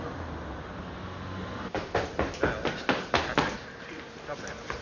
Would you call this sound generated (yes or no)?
no